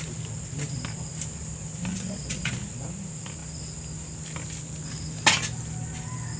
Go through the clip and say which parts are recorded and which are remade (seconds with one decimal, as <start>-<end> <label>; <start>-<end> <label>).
0.0-1.9 recorded; 1.9-2.5 remade; 2.5-6.4 recorded